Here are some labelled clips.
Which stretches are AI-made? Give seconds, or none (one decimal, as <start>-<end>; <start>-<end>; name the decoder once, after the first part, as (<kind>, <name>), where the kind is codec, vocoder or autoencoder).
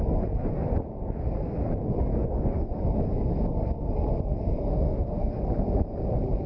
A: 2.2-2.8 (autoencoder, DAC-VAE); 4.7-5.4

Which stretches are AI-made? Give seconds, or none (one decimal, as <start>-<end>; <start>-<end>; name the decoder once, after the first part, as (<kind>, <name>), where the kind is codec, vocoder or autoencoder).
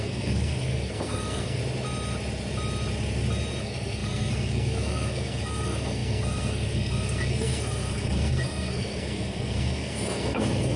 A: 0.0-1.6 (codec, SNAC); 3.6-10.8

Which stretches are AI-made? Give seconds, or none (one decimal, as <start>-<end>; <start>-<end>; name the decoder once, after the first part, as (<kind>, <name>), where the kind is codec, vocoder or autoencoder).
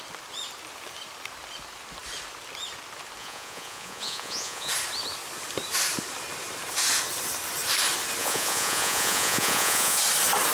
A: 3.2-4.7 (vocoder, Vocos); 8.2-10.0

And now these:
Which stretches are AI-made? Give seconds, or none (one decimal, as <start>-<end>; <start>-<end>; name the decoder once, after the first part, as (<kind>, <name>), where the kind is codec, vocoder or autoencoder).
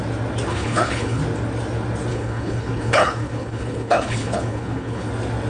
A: 0.5-1.2 (codec, HILCodec); 2.1-5.1